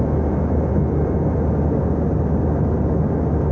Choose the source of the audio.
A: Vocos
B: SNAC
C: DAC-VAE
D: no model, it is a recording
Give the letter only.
D